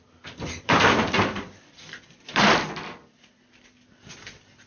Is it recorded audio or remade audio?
remade